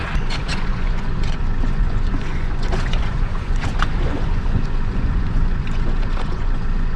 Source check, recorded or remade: remade